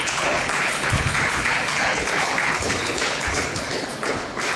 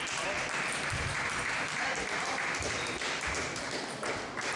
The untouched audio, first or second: second